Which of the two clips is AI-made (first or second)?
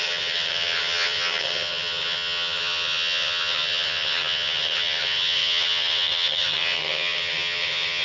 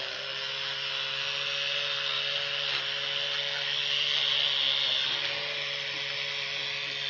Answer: first